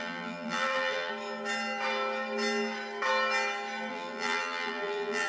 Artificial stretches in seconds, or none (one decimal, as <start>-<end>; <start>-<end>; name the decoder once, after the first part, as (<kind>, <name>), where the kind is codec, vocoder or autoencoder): 0.0-1.1 (vocoder, BigVGAN v2); 3.9-5.3

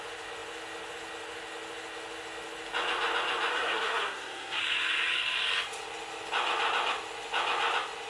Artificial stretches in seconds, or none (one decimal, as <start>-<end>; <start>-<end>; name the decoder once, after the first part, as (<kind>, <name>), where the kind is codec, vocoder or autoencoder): 3.5-4.6 (codec, SNAC)